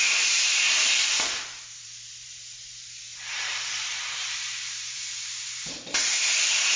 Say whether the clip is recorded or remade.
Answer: remade